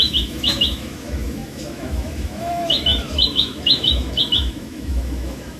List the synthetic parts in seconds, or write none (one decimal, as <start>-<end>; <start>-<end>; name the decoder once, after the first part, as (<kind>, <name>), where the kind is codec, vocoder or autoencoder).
0.0-5.6 (autoencoder, DAC-VAE)